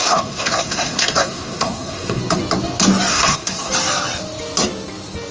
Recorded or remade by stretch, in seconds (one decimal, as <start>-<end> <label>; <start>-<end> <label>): 0.0-2.2 remade; 2.2-3.1 recorded; 3.1-3.7 remade; 3.7-5.3 recorded